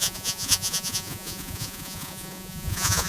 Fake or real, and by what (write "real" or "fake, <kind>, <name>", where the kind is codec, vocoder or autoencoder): fake, vocoder, Vocos